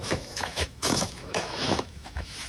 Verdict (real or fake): fake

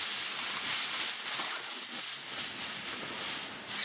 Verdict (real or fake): real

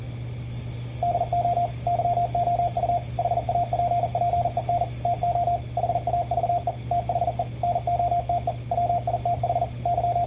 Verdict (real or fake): real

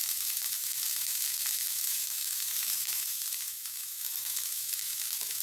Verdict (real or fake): fake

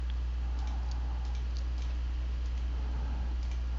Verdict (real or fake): real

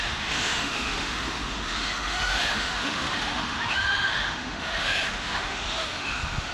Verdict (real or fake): fake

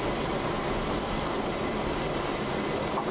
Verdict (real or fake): real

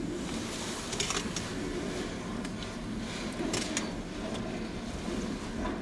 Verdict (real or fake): real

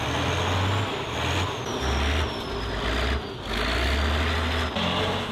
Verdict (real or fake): real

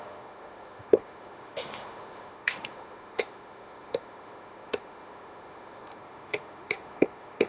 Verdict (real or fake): fake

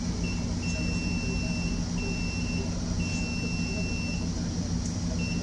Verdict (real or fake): real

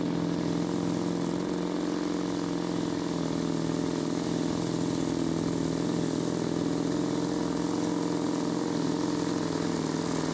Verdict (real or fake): real